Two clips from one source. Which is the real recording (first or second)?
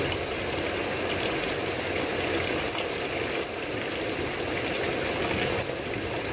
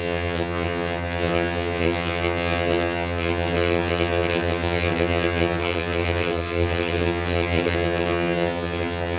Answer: first